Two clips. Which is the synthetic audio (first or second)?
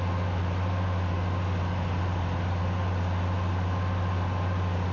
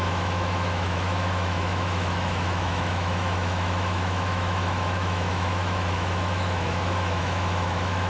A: second